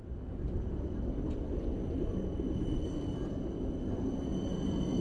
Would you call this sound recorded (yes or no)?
yes